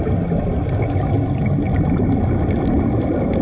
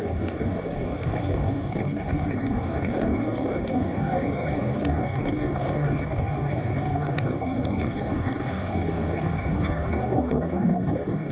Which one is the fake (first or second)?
second